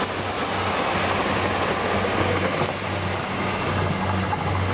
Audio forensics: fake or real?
real